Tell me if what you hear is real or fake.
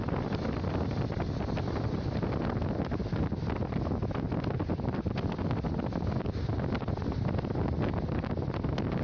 real